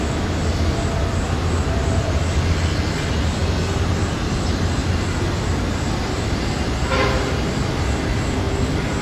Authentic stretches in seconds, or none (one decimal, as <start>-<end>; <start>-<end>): 0.0-9.0